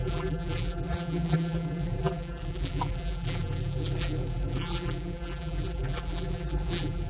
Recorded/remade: remade